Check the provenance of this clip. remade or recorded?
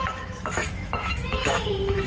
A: remade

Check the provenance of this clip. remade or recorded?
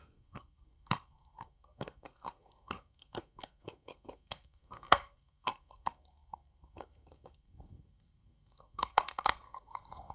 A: remade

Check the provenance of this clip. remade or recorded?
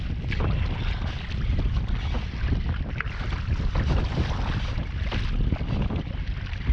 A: recorded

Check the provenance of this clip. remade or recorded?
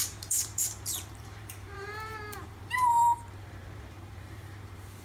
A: remade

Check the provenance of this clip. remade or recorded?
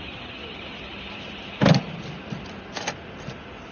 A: recorded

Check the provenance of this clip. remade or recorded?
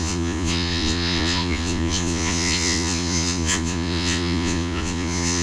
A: remade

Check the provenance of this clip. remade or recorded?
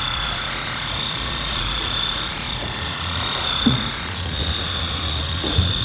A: remade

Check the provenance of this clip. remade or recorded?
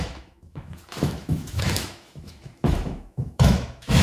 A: remade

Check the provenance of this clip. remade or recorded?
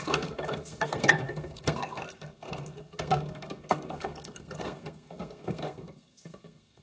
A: remade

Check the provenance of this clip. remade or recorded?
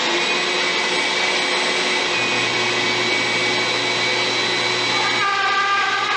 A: recorded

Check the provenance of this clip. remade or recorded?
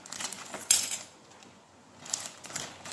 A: remade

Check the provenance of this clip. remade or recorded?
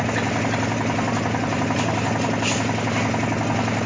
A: recorded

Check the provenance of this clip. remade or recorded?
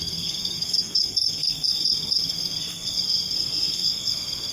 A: remade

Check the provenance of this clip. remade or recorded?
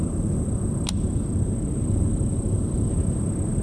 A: recorded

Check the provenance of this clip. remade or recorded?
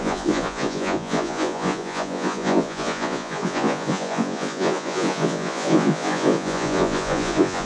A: remade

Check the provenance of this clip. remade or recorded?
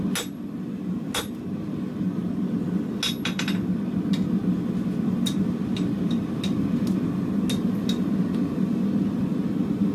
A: recorded